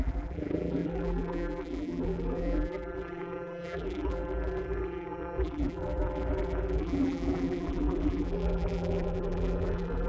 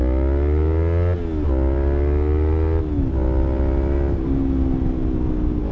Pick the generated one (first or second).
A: first